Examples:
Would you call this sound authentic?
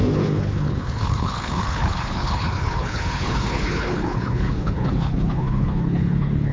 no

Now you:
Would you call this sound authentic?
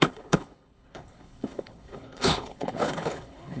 no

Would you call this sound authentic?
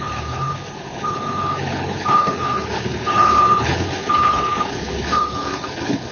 no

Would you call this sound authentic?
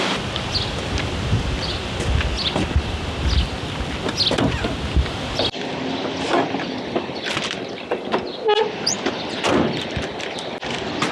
yes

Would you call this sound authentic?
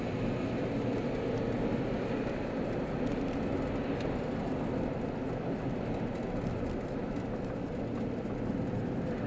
yes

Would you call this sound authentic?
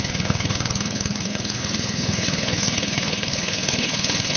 no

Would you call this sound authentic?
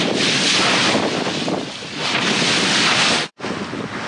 yes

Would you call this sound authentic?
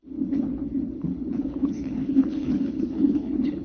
no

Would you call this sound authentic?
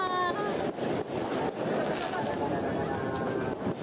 yes